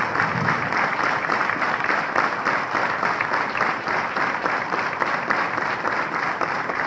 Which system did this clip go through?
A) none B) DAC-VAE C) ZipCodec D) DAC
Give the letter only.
A